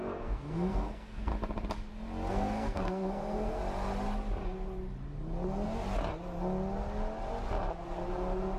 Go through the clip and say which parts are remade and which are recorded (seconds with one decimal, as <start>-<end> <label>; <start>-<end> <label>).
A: 0.0-1.3 remade; 1.3-2.3 recorded; 2.3-3.6 remade; 3.6-8.6 recorded